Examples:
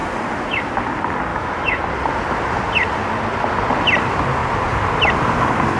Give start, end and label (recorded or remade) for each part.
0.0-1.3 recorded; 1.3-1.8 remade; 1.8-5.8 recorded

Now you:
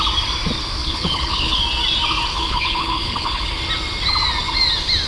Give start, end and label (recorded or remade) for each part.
0.0-0.8 recorded; 0.8-1.6 remade; 1.6-2.3 recorded; 2.3-3.5 remade; 3.5-5.1 recorded

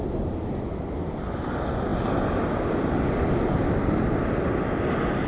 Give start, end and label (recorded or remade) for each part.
0.0-5.3 recorded